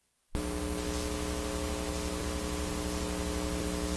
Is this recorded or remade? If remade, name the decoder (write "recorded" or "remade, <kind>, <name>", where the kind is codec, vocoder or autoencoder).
recorded